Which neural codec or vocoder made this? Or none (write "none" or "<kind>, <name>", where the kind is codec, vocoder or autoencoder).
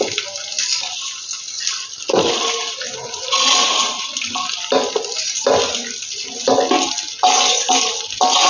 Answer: none